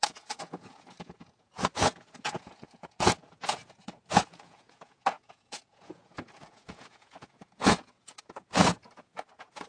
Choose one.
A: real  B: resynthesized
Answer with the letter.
B